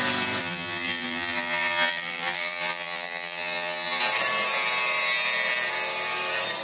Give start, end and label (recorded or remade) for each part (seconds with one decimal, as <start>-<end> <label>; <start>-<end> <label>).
0.0-0.4 recorded; 0.4-4.0 remade; 4.0-6.6 recorded